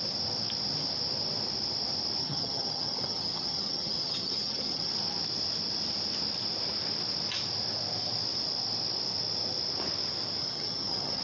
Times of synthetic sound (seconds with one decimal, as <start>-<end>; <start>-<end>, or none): 2.2-4.9; 10.4-11.2